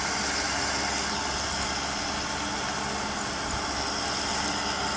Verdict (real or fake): real